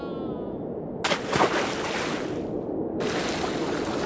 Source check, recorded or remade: recorded